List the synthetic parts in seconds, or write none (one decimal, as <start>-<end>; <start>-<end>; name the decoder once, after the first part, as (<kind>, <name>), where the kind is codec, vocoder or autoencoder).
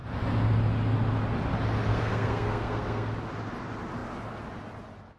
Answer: 1.9-3.1 (codec, SNAC)